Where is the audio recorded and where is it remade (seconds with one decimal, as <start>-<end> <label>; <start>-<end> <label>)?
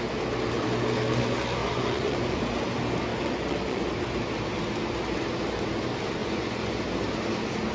0.0-1.6 recorded; 1.6-2.4 remade; 2.4-3.1 recorded; 3.1-3.9 remade; 3.9-6.2 recorded; 6.2-6.8 remade; 6.8-7.7 recorded